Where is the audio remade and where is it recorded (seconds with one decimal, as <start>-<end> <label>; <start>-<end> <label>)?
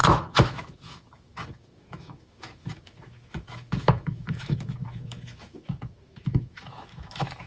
0.0-7.5 remade